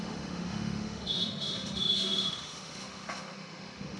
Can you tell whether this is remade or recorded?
remade